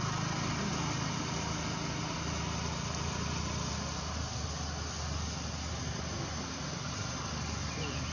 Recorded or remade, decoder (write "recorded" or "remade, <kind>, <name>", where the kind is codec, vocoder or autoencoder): recorded